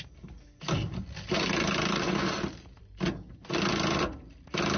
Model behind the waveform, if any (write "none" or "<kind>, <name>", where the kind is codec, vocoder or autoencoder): none